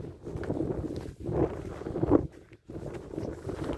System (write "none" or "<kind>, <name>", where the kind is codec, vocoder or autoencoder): none